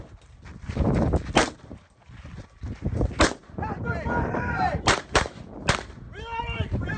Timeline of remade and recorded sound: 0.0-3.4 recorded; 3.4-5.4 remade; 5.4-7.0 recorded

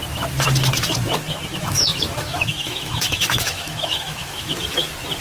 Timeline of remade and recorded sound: 0.0-1.5 recorded; 1.5-4.6 remade; 4.6-5.2 recorded